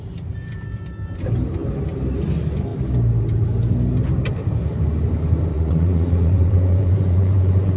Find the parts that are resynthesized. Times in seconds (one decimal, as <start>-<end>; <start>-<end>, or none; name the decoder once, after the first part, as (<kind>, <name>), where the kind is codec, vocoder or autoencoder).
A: 5.5-7.8 (vocoder, Vocos)